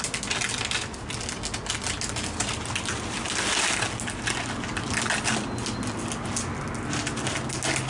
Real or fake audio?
real